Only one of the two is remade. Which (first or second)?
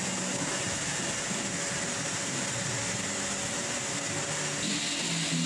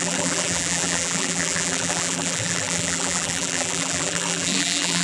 second